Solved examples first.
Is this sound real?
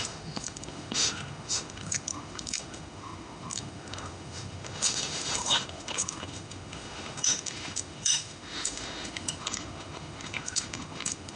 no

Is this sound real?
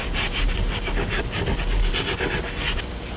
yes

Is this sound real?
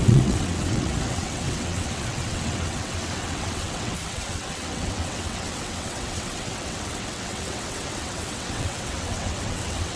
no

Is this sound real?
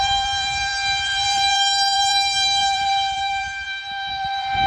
no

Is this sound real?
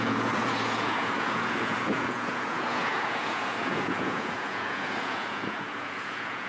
no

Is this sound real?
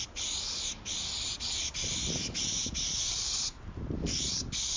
yes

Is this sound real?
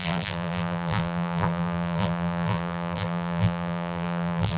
no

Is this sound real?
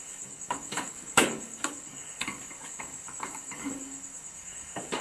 no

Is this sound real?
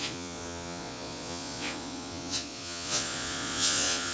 no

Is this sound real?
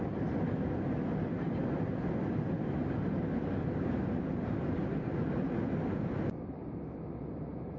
yes